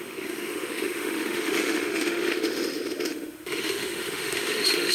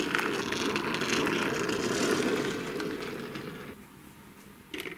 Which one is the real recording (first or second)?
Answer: second